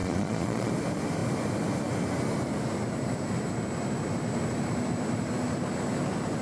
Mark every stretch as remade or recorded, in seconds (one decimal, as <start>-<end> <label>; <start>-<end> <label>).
0.0-0.7 remade; 0.7-6.4 recorded